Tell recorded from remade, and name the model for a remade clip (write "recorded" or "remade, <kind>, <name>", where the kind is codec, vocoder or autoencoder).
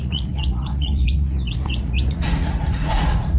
remade, vocoder, Vocos